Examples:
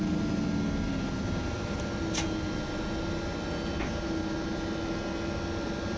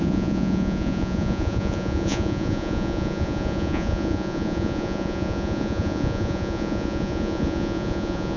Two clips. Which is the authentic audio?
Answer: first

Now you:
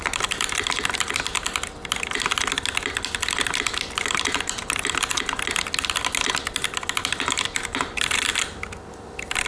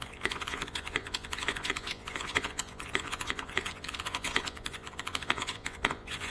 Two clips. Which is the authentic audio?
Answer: first